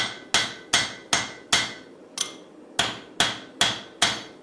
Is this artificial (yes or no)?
no